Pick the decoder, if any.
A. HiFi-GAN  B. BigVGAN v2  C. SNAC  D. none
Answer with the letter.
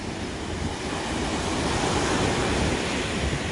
D